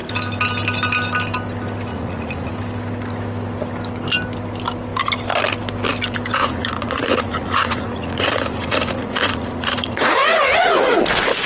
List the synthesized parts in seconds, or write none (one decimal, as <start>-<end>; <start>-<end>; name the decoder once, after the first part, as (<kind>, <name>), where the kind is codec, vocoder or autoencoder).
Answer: 1.9-2.5 (vocoder, Vocos); 6.4-11.0